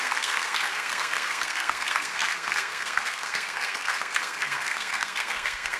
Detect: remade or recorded remade